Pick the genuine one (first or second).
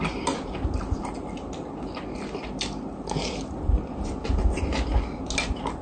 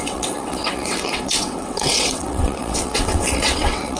first